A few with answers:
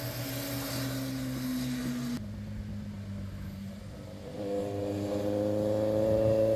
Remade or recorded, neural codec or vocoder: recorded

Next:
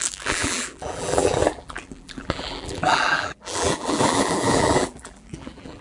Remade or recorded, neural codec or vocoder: remade, vocoder, BigVGAN v2